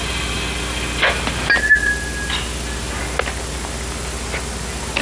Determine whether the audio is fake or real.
real